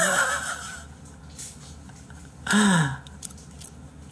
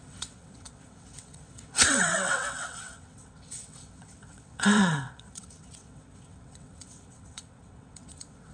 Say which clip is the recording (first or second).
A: first